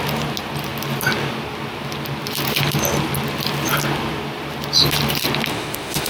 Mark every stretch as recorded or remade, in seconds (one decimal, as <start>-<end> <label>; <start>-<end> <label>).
0.0-5.5 recorded; 5.5-6.1 remade